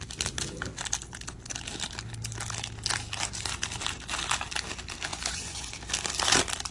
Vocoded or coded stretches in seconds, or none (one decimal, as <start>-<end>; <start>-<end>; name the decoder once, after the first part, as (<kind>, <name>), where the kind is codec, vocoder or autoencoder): 5.1-5.7 (vocoder, Vocos)